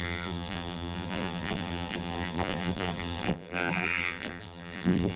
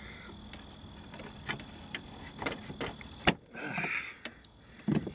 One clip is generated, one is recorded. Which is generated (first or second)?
first